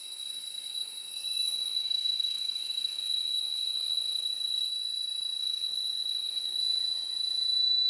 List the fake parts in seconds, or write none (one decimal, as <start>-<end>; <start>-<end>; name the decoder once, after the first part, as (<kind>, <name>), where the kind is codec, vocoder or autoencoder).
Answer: 0.0-4.7 (codec, SNAC); 5.4-6.6